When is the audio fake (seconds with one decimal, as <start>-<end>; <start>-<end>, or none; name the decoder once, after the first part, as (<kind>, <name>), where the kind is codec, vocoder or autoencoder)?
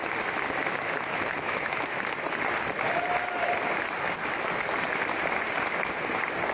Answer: 0.6-2.1 (autoencoder, DAC-VAE)